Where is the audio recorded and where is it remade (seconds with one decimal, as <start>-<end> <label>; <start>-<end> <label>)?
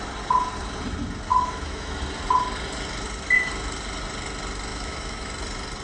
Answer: 0.0-1.3 recorded; 1.3-2.0 remade; 2.0-4.7 recorded; 4.7-5.3 remade; 5.3-5.8 recorded